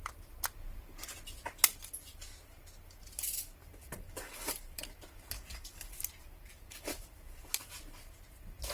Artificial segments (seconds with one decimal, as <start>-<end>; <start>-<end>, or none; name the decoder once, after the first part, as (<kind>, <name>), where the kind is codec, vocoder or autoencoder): 3.6-7.6 (vocoder, BigVGAN v2)